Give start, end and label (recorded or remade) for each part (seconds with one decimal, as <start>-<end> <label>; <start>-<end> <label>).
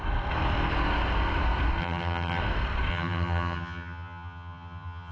0.0-1.8 recorded; 1.8-2.4 remade; 2.4-2.9 recorded; 2.9-5.1 remade